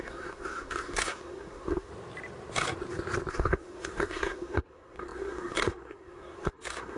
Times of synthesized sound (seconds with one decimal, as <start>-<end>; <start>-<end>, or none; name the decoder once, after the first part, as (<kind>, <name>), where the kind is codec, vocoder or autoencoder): 0.0-1.9 (codec, SNAC); 3.3-7.0